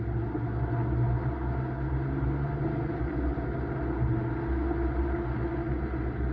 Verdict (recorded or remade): recorded